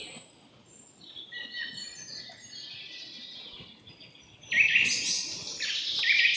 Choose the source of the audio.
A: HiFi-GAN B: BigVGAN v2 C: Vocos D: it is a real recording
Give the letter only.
D